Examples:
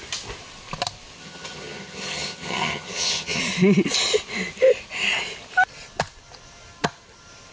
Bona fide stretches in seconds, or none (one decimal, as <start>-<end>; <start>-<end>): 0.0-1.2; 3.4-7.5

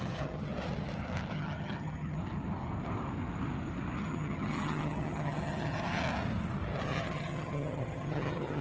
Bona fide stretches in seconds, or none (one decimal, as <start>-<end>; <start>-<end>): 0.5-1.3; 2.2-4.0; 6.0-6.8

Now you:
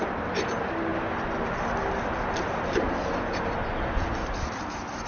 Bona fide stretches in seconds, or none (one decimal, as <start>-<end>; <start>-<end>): 0.0-5.1